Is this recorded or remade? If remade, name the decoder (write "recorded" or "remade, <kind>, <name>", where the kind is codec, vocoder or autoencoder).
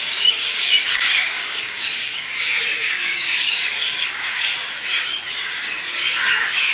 remade, codec, DAC